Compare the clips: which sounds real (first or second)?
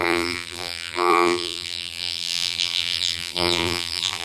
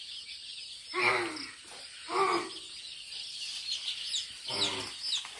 second